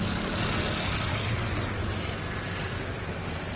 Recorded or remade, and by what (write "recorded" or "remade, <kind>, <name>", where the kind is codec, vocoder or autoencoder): recorded